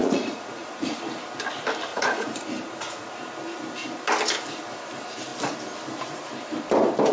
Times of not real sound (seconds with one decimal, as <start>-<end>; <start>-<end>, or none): 0.0-1.0; 1.9-3.2